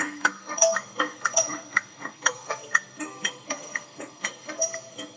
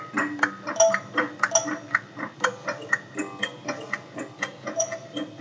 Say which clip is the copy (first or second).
first